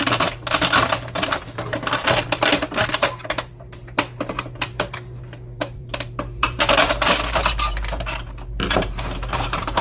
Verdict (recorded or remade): remade